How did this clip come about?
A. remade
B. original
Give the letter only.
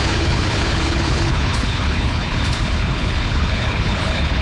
A